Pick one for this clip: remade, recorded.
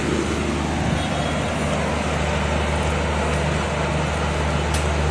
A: recorded